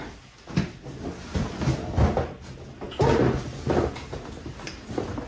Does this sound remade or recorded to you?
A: recorded